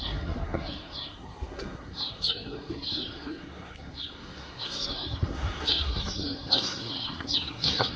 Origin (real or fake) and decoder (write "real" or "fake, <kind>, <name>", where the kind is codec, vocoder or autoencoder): fake, codec, SNAC